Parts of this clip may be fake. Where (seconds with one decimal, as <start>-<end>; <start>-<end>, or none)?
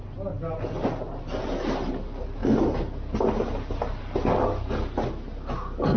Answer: none